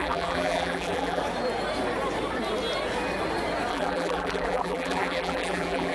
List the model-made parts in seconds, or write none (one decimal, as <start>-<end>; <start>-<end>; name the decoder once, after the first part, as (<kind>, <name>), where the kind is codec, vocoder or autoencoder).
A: 0.0-1.2 (vocoder, BigVGAN v2); 3.7-5.9